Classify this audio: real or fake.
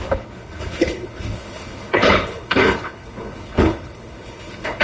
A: fake